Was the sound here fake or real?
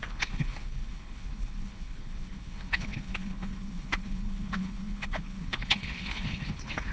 fake